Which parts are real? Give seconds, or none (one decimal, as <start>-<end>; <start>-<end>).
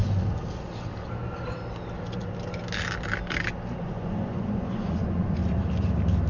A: 0.0-3.8; 5.4-6.3